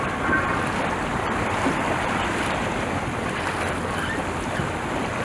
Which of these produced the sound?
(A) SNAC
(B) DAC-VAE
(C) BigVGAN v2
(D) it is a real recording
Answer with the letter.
C